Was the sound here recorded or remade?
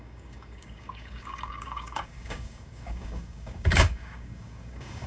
remade